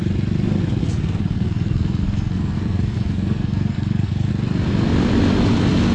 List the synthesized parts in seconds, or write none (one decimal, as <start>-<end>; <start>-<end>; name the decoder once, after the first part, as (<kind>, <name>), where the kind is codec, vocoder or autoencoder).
0.8-4.3 (codec, SNAC)